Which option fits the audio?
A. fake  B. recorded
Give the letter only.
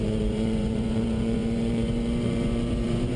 A